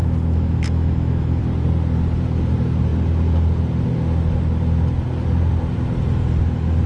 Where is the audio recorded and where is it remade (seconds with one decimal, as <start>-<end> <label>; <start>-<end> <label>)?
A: 0.0-1.4 remade; 1.4-6.9 recorded